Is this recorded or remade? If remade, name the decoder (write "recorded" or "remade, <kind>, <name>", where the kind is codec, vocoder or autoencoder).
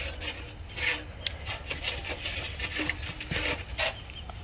recorded